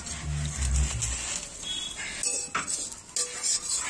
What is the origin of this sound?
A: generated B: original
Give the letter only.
B